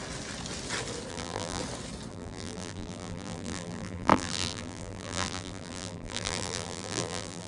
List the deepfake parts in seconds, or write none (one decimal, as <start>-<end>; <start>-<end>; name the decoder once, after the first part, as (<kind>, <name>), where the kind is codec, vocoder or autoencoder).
1.1-1.6 (vocoder, BigVGAN v2); 2.1-7.5